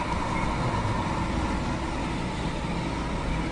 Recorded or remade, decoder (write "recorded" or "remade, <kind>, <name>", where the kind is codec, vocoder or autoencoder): recorded